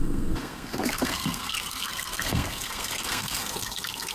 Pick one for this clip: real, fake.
fake